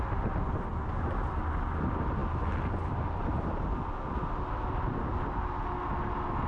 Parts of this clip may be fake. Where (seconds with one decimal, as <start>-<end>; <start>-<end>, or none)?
none